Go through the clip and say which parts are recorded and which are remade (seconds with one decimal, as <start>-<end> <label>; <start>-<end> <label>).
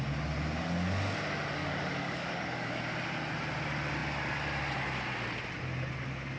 0.0-1.6 recorded; 1.6-2.8 remade; 2.8-6.4 recorded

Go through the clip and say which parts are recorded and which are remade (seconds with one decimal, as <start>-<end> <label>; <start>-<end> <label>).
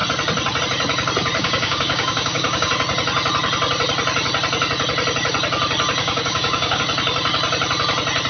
0.0-1.4 recorded; 1.4-2.7 remade; 2.7-6.0 recorded; 6.0-6.8 remade; 6.8-8.3 recorded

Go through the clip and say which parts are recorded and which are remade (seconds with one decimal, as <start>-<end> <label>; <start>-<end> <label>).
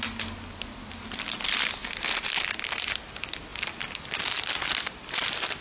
0.0-5.6 recorded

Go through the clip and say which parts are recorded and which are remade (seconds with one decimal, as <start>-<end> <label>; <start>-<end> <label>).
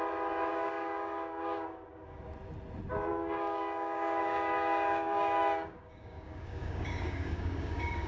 0.0-0.5 recorded; 0.5-2.2 remade; 2.2-3.1 recorded; 3.1-8.1 remade